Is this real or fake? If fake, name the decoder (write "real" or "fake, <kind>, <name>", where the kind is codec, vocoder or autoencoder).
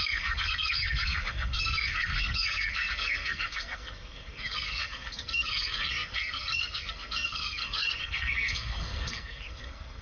fake, codec, SNAC